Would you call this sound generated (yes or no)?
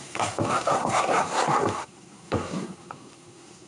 yes